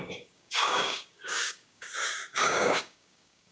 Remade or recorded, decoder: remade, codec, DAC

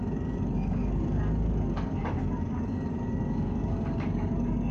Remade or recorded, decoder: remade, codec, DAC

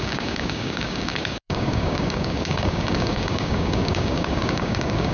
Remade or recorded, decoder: remade, codec, DAC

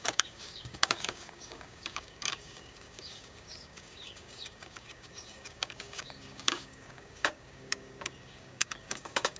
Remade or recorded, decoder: remade, codec, DAC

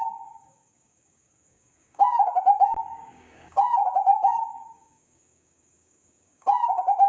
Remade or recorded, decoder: remade, codec, DAC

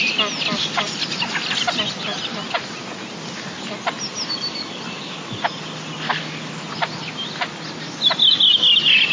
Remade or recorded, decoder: recorded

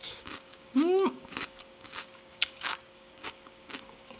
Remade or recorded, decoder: remade, codec, DAC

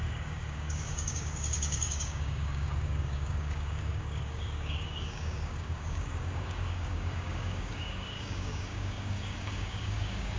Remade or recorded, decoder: remade, codec, DAC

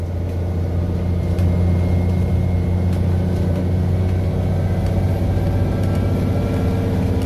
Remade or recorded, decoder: recorded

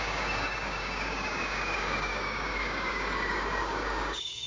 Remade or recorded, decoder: remade, codec, DAC